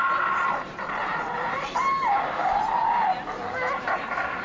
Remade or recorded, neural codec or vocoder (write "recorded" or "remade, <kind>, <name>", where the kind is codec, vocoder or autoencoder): recorded